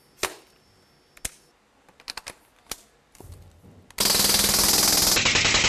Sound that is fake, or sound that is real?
real